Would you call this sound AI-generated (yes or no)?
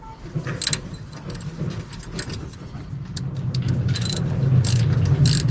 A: no